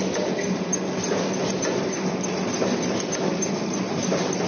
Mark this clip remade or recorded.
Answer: recorded